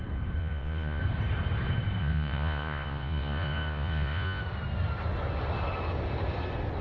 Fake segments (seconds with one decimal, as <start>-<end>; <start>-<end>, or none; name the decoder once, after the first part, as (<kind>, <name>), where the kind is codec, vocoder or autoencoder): 0.4-1.0 (vocoder, Vocos); 2.0-4.4